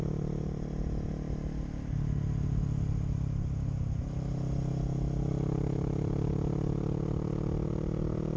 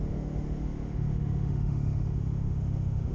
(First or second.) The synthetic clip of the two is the second